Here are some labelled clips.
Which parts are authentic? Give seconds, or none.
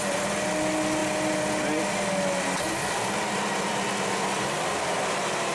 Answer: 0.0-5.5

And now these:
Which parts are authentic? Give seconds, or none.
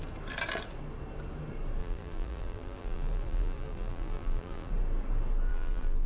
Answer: 0.0-1.8; 4.7-5.5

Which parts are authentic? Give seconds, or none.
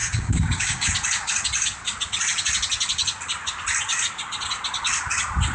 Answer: 0.9-5.5